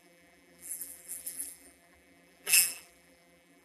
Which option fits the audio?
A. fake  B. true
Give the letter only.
A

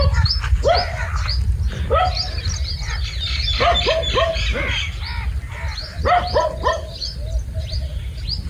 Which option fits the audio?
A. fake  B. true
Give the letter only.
B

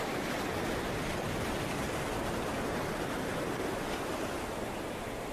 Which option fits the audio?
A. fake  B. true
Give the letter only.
B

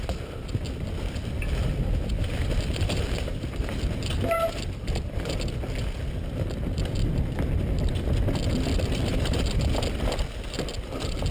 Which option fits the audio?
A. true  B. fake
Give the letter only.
A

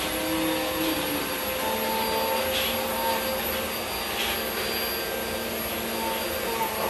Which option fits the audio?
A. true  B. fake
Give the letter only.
A